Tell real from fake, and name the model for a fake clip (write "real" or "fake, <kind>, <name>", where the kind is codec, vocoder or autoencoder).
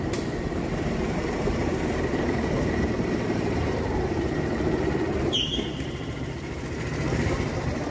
fake, vocoder, BigVGAN v2